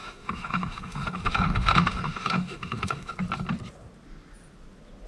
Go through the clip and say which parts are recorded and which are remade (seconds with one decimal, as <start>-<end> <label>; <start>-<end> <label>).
0.0-3.1 remade; 3.1-5.1 recorded